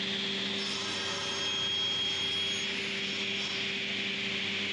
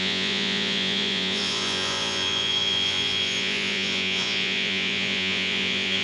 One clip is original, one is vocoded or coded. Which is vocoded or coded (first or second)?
second